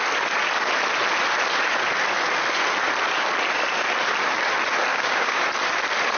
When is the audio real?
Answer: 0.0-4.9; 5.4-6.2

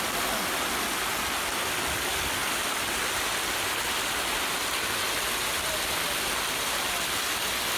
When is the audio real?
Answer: 0.0-7.8